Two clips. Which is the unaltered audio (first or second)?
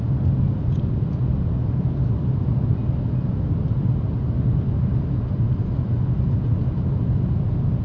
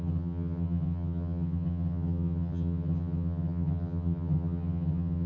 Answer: first